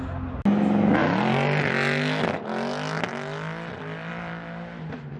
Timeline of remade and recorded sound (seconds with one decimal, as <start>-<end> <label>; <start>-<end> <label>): 0.0-5.2 recorded